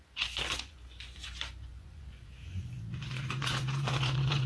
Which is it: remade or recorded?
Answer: remade